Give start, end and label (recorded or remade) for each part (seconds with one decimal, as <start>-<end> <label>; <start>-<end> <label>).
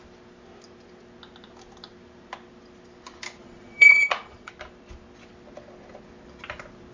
0.0-3.4 recorded; 3.4-4.5 remade; 4.5-6.9 recorded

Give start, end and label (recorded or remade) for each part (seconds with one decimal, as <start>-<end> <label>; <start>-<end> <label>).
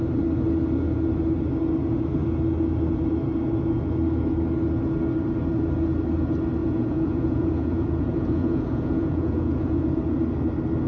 0.0-6.6 recorded; 6.6-10.0 remade; 10.0-10.9 recorded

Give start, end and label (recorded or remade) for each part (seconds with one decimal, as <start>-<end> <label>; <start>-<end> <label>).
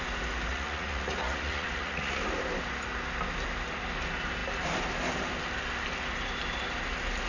0.0-0.5 recorded; 0.5-2.2 remade; 2.2-7.3 recorded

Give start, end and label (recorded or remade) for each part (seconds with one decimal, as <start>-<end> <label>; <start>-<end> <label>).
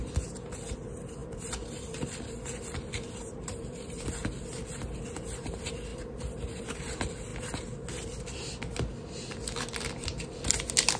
0.0-11.0 recorded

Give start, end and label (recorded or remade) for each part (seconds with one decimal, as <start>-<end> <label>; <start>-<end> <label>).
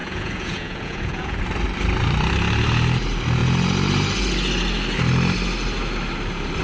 0.0-1.4 remade; 1.4-6.6 recorded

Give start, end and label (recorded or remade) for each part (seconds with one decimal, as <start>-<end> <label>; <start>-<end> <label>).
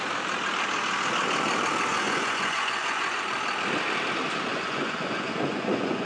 0.0-1.9 recorded; 1.9-3.2 remade; 3.2-4.5 recorded; 4.5-6.1 remade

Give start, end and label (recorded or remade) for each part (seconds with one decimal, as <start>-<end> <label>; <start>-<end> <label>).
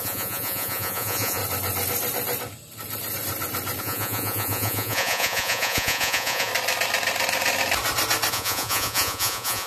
0.0-1.4 remade; 1.4-3.8 recorded; 3.8-6.5 remade; 6.5-8.3 recorded; 8.3-9.7 remade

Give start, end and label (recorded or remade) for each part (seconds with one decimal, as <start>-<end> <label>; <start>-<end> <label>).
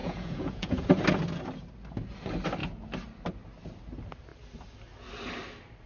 0.0-0.9 remade; 0.9-5.9 recorded